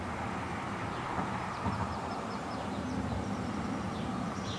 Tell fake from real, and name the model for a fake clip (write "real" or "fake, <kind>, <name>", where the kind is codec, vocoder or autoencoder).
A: fake, vocoder, BigVGAN v2